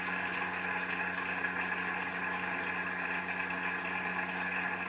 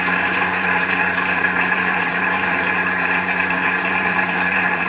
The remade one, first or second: second